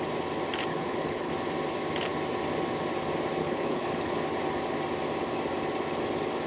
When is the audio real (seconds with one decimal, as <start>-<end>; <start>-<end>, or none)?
0.0-0.7; 1.3-3.4; 4.1-6.5